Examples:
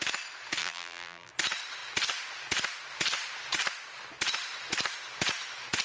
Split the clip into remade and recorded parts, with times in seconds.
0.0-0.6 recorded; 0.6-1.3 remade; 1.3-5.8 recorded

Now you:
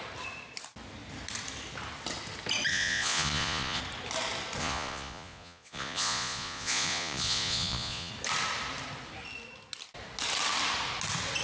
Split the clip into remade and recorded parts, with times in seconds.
0.0-2.7 recorded; 2.7-3.8 remade; 3.8-4.6 recorded; 4.6-8.1 remade; 8.1-11.4 recorded

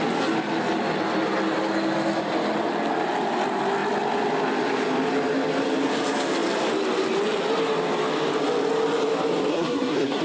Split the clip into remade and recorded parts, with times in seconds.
0.0-9.5 recorded; 9.5-10.2 remade

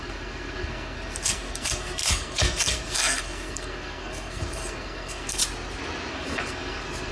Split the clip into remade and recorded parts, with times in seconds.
0.0-5.4 remade; 5.4-6.1 recorded; 6.1-7.1 remade

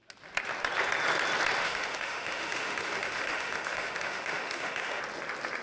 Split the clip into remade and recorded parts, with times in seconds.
0.0-1.6 recorded; 1.6-5.0 remade; 5.0-5.6 recorded

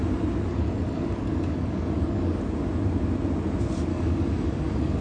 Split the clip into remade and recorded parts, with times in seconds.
0.0-0.5 recorded; 0.5-2.4 remade; 2.4-3.9 recorded; 3.9-5.0 remade

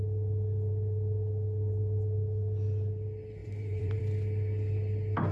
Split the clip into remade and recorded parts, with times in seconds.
0.0-3.4 recorded; 3.4-4.0 remade; 4.0-5.3 recorded